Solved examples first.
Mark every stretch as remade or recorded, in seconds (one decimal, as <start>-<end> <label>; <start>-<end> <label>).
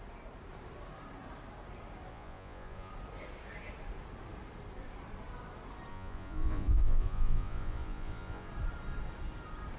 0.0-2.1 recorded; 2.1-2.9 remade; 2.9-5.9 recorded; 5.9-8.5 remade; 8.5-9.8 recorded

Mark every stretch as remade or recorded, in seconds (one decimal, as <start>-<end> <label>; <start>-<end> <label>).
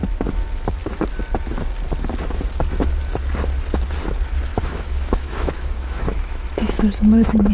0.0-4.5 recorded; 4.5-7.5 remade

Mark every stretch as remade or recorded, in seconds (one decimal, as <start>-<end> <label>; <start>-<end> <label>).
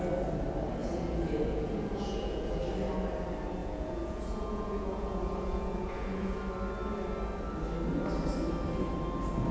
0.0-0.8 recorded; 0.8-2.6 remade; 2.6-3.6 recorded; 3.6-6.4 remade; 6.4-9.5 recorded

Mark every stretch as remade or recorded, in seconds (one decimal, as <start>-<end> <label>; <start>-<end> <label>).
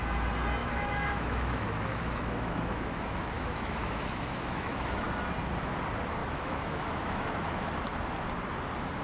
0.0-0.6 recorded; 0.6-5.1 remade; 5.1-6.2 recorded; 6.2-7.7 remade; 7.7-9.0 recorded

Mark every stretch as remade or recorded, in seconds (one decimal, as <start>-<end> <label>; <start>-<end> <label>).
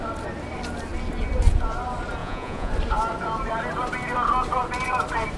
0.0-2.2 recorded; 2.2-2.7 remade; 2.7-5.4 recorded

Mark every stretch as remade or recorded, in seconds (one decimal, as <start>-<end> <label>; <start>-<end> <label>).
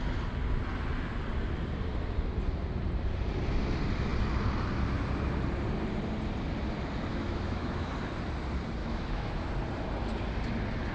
0.0-7.1 recorded; 7.1-7.9 remade; 7.9-8.8 recorded; 8.8-9.5 remade; 9.5-10.9 recorded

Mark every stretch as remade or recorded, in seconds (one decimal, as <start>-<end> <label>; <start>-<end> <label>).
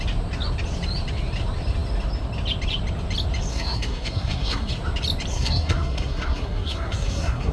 0.0-3.5 recorded; 3.5-4.7 remade; 4.7-5.3 recorded; 5.3-7.5 remade